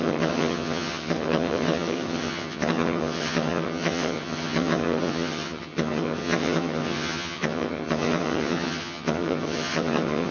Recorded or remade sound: remade